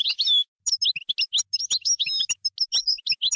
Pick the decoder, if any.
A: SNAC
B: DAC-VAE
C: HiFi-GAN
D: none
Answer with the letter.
D